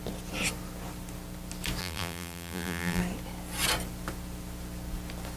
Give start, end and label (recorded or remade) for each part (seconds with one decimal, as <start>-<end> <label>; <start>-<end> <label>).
0.0-1.8 recorded; 1.8-3.0 remade; 3.0-5.4 recorded